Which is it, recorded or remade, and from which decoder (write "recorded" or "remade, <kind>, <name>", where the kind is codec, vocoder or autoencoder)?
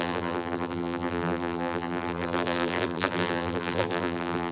remade, vocoder, BigVGAN v2